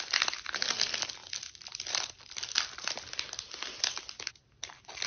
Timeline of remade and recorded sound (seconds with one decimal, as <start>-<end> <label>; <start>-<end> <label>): 0.0-5.1 recorded